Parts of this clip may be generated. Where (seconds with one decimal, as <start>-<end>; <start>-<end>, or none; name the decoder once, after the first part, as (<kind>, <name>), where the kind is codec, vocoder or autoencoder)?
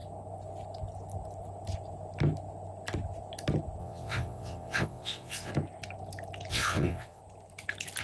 3.8-5.5 (vocoder, WaveNeXt); 6.5-7.2